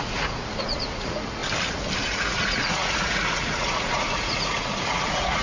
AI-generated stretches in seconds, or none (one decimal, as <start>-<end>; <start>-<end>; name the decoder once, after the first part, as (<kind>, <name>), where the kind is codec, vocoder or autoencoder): 0.0-1.4 (vocoder, Vocos); 2.0-5.4